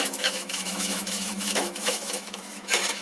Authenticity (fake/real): fake